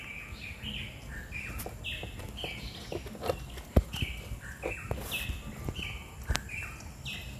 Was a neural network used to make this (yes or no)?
no